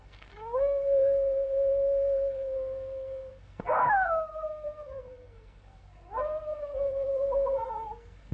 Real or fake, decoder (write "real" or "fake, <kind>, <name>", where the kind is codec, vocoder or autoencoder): fake, codec, SNAC